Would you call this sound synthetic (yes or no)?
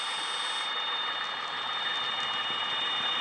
yes